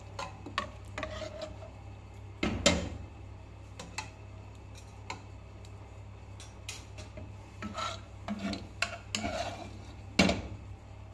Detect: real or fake real